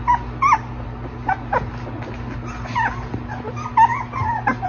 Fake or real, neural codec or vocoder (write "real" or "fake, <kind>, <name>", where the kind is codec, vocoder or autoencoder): real